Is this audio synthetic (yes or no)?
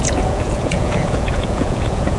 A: yes